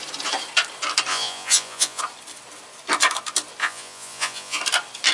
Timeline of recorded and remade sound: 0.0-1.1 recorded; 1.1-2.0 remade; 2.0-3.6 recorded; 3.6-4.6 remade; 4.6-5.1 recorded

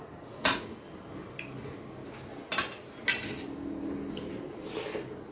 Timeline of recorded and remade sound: 0.0-5.3 recorded

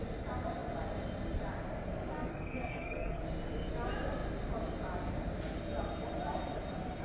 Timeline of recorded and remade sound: 0.0-2.3 recorded; 2.3-3.2 remade; 3.2-7.0 recorded